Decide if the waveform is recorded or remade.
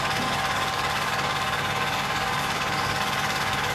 remade